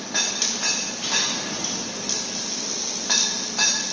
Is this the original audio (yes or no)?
yes